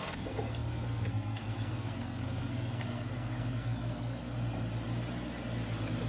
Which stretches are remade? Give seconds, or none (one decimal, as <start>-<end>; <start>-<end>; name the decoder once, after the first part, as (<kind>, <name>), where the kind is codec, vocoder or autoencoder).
0.0-4.2 (codec, SNAC)